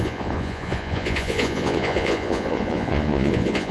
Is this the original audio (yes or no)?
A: no